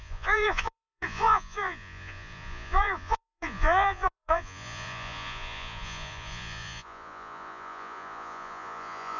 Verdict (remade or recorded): remade